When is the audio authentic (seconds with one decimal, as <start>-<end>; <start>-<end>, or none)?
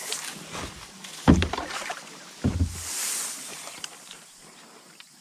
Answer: 0.0-5.2